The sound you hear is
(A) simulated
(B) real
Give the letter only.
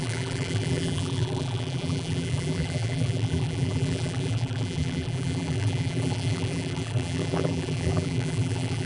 A